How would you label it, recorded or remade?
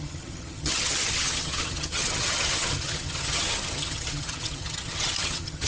remade